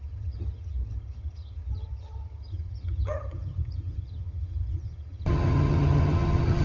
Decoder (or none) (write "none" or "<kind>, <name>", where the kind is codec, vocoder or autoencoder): vocoder, HiFi-GAN